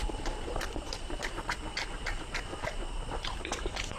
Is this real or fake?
fake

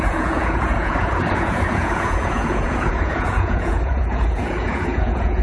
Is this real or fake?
fake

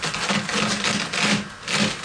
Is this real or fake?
real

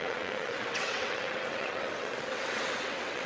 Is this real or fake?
fake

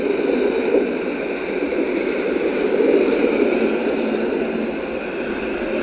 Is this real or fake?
real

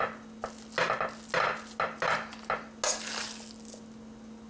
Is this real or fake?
real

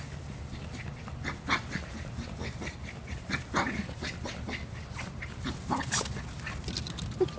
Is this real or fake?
real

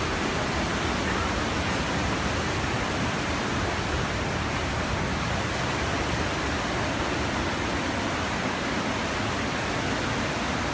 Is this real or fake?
real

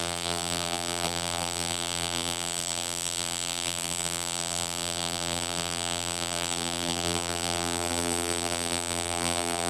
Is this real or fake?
fake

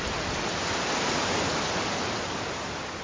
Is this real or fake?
real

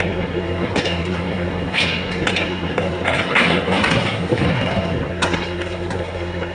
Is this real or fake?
fake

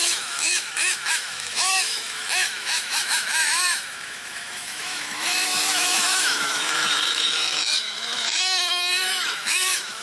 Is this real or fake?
fake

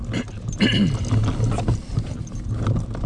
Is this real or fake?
real